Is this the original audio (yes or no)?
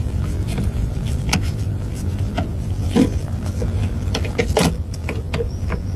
no